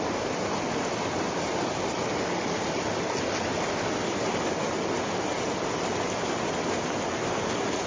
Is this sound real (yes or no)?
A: yes